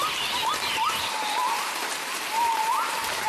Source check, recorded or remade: recorded